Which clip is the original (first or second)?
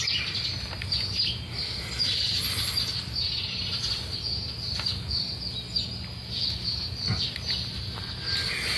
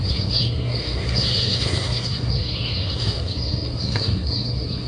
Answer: first